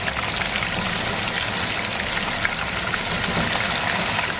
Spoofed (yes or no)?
no